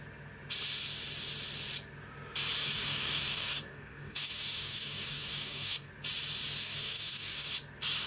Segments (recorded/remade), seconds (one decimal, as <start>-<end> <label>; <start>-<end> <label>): 0.0-2.6 recorded; 2.6-5.9 remade; 5.9-6.6 recorded; 6.6-7.5 remade; 7.5-8.1 recorded